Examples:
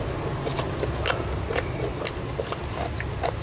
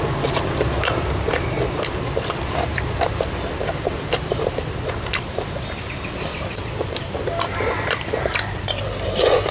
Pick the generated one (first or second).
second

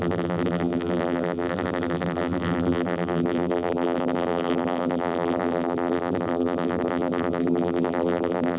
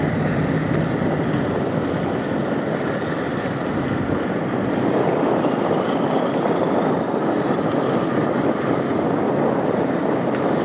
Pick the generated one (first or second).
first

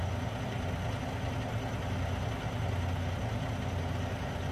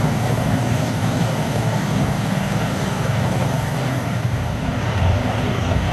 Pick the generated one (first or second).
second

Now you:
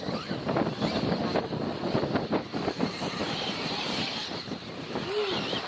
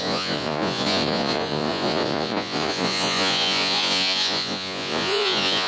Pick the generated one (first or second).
second